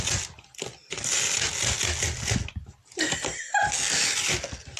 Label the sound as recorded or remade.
recorded